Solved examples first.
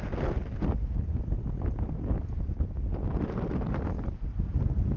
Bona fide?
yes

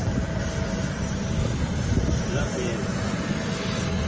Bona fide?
yes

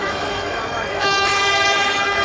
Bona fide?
no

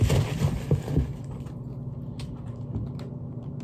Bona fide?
yes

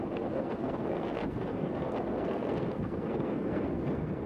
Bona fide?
no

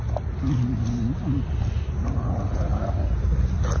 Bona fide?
yes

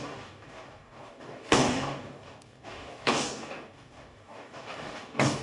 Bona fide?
no